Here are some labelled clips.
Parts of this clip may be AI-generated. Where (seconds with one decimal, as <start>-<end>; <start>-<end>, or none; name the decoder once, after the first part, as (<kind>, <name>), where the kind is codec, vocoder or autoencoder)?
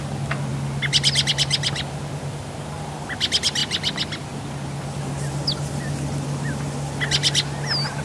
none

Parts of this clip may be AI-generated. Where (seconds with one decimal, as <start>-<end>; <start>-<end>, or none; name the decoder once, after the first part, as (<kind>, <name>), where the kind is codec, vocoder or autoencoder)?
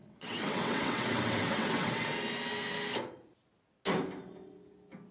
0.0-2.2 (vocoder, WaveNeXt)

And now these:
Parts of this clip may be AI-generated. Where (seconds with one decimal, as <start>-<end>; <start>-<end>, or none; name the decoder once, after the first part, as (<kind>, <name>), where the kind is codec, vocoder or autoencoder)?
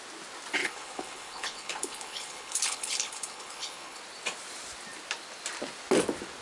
0.6-4.0 (codec, HILCodec)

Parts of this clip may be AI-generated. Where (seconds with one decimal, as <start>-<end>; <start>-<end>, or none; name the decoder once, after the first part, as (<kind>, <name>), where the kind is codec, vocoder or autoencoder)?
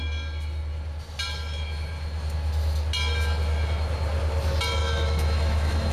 4.8-5.9 (autoencoder, DAC-VAE)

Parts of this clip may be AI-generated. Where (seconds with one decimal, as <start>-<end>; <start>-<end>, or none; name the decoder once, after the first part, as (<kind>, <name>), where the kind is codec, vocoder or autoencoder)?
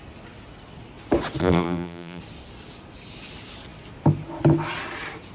1.4-2.2 (vocoder, BigVGAN v2)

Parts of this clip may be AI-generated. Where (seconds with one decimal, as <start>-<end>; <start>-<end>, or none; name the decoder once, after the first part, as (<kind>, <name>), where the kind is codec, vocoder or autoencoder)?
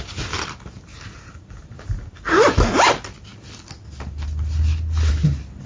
none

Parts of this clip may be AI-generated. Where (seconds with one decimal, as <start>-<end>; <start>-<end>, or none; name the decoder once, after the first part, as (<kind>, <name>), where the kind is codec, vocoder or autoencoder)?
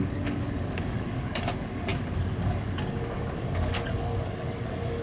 0.0-5.0 (codec, DAC)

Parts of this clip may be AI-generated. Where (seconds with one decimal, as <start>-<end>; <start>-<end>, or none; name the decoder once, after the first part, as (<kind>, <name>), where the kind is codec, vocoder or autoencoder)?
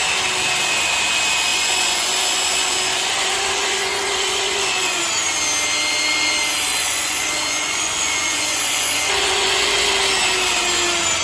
1.5-5.0 (vocoder, Vocos); 6.7-9.9